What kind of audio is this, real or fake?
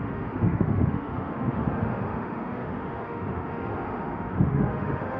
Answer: fake